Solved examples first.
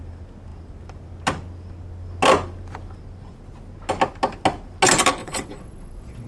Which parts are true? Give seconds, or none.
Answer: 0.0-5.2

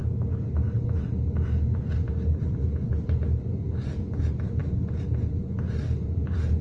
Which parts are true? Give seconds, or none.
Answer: 0.0-6.6

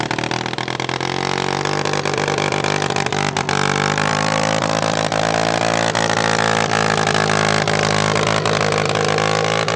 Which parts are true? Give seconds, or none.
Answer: 0.0-4.1; 5.2-9.8

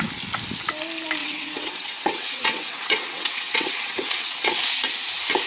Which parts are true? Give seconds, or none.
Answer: 0.0-1.2; 4.5-5.5